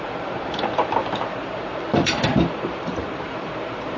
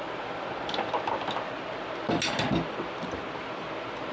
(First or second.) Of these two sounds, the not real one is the first